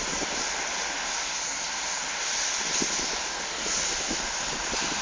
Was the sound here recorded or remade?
recorded